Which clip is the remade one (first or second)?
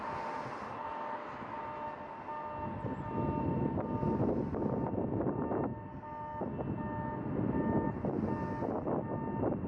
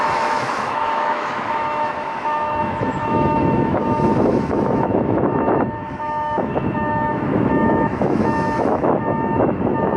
second